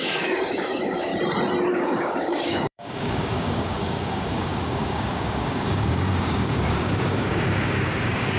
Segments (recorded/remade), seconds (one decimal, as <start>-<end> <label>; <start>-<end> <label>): 0.0-1.1 remade; 1.1-1.7 recorded; 1.7-8.4 remade